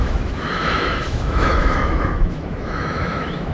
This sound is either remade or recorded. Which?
remade